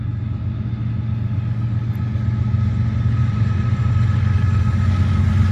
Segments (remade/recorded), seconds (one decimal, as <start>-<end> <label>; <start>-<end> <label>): 0.0-3.2 recorded; 3.2-3.9 remade; 3.9-5.5 recorded